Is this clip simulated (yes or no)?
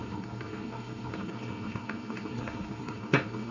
yes